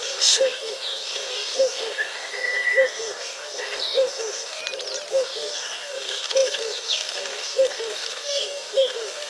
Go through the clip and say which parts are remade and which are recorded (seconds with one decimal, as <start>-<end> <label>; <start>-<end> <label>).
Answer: 0.0-4.6 remade; 4.6-5.1 recorded; 5.1-9.3 remade